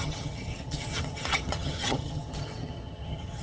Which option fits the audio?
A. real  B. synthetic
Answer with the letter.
B